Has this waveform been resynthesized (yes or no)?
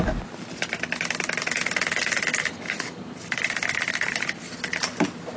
no